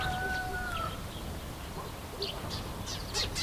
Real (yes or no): yes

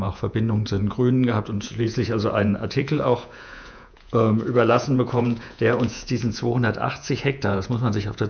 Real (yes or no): no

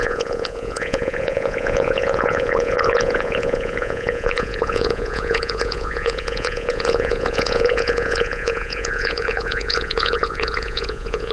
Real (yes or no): no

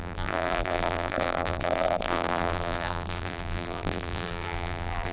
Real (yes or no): no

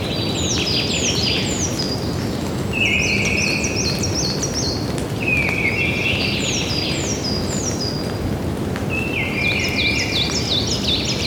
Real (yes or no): yes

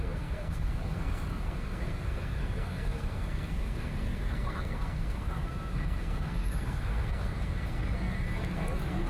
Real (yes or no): no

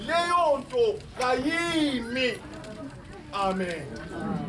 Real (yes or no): yes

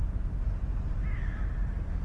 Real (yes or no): yes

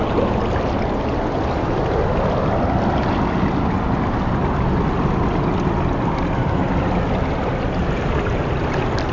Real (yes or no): yes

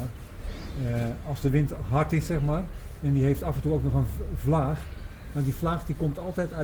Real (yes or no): yes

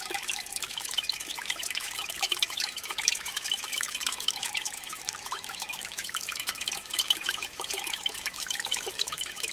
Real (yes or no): no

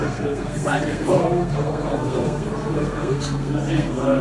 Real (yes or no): no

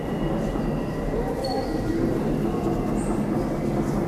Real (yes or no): yes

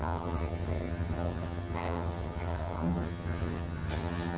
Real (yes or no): no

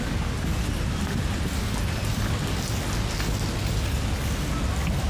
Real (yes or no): yes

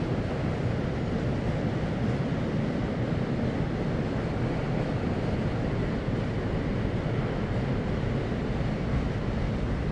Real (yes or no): yes